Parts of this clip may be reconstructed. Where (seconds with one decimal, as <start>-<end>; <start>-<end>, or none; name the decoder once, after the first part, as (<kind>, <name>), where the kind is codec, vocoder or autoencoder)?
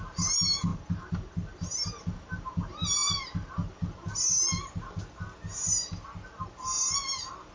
none